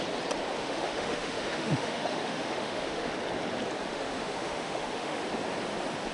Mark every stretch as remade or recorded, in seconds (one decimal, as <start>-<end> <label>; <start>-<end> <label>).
0.0-0.6 recorded; 0.6-3.1 remade; 3.1-3.9 recorded; 3.9-5.2 remade; 5.2-6.1 recorded